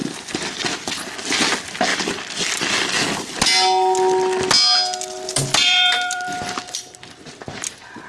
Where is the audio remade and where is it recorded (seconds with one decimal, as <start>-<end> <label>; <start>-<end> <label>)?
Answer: 0.0-0.7 remade; 0.7-5.6 recorded; 5.6-7.1 remade; 7.1-8.1 recorded